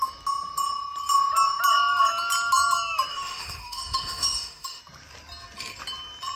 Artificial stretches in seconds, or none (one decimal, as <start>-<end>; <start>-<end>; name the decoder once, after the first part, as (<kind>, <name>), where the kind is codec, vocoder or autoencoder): 3.1-4.8 (autoencoder, DAC-VAE)